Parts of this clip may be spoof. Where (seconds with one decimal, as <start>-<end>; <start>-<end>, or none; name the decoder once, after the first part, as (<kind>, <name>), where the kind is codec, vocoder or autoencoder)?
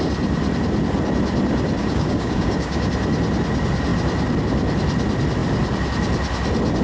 1.8-2.9 (codec, DAC)